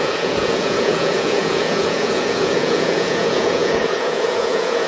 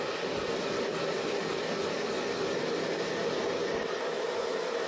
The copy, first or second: first